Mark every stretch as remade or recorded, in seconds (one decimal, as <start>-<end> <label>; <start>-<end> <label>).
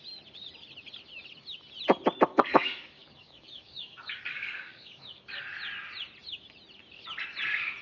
0.0-2.3 recorded; 2.3-5.4 remade; 5.4-7.8 recorded